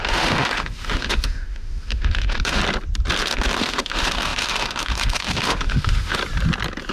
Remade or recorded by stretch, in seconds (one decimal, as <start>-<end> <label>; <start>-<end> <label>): 0.0-2.6 remade; 2.6-3.2 recorded; 3.2-6.2 remade; 6.2-6.9 recorded